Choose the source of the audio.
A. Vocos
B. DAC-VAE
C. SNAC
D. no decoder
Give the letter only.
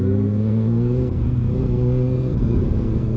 C